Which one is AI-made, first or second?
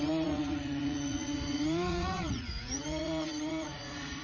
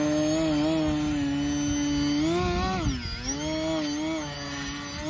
first